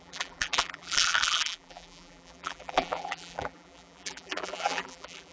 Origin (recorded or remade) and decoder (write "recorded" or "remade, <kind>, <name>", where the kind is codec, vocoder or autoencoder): remade, vocoder, BigVGAN v2